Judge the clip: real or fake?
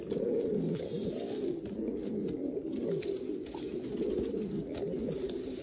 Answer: real